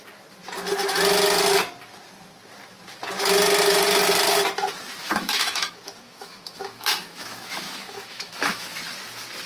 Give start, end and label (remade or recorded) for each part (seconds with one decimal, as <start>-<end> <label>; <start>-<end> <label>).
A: 0.0-5.0 recorded; 5.0-8.8 remade; 8.8-9.5 recorded